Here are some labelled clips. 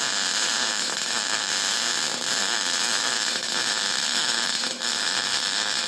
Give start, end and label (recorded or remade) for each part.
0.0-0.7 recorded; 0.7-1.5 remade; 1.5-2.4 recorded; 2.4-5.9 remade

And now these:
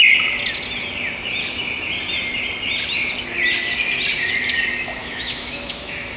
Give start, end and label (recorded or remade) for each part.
0.0-5.0 recorded; 5.0-6.2 remade

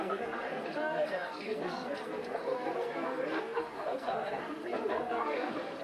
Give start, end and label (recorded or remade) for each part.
0.0-5.8 remade

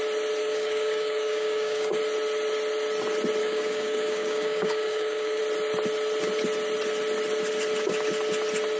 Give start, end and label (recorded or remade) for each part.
0.0-0.4 recorded; 0.4-2.0 remade; 2.0-3.4 recorded; 3.4-5.4 remade; 5.4-8.8 recorded